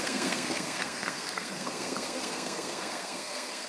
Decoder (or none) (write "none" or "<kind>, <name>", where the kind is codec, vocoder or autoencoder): codec, SNAC